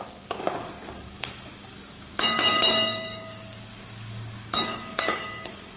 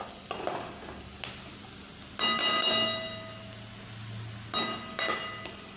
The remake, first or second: first